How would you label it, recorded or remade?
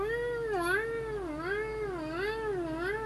recorded